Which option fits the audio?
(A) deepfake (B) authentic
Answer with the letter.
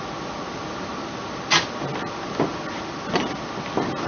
B